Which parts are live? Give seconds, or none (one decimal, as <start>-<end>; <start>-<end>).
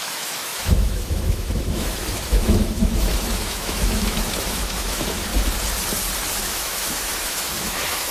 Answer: 5.3-6.4